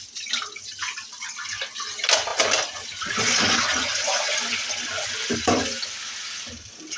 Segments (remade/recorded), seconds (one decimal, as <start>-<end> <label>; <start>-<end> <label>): 0.0-7.0 recorded